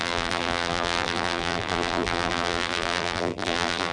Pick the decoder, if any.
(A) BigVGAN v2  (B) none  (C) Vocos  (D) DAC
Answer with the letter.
A